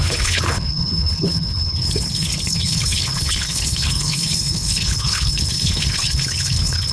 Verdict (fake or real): fake